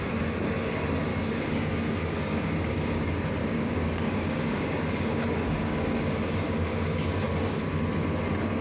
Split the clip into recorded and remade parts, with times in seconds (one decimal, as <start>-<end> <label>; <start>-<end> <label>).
0.0-1.1 recorded; 1.1-3.0 remade; 3.0-3.4 recorded; 3.4-7.6 remade; 7.6-8.6 recorded